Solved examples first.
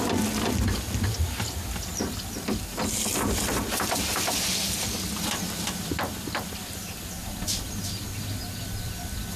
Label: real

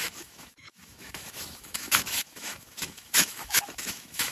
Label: fake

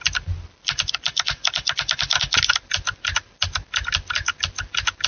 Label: real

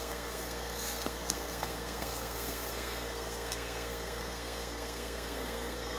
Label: fake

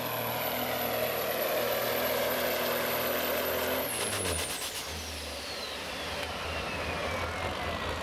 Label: real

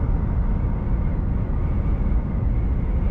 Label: real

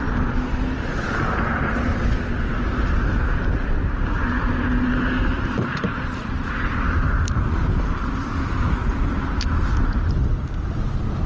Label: real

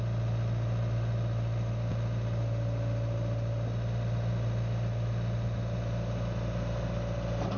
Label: real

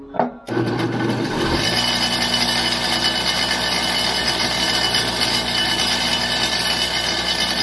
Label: real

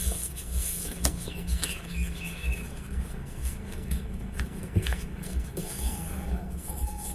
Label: fake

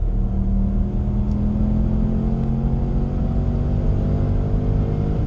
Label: real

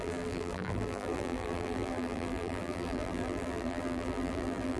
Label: fake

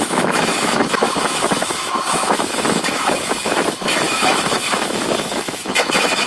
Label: fake